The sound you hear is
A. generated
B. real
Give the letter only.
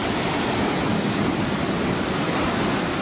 A